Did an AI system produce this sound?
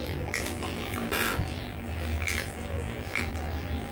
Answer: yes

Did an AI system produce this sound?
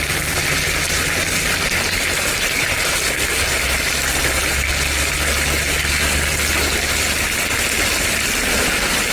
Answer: no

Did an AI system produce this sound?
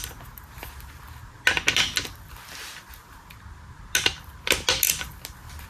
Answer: no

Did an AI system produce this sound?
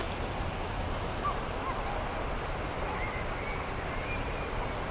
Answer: yes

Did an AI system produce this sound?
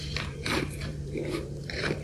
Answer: yes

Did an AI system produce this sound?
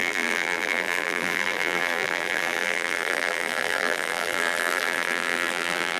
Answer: yes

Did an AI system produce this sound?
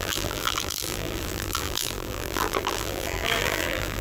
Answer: yes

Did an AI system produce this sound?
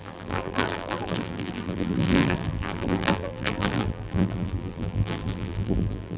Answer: yes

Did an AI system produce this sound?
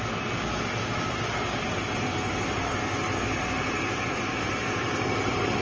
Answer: no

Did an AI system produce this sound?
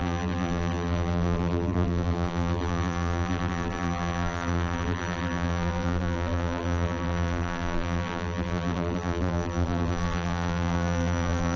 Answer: yes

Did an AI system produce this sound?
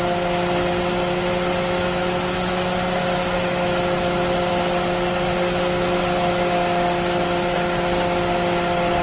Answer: no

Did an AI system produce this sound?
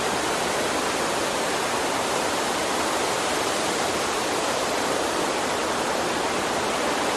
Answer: no